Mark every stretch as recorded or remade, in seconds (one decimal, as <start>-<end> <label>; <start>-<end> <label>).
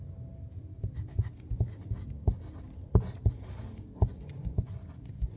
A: 0.0-4.1 recorded; 4.1-5.4 remade